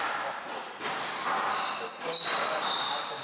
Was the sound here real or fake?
real